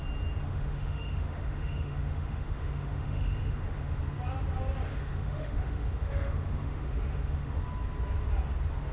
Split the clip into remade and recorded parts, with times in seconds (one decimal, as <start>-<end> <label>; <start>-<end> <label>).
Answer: 0.0-0.5 recorded; 0.5-4.0 remade; 4.0-4.9 recorded; 4.9-7.6 remade; 7.6-8.9 recorded